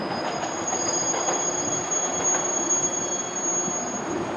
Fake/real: real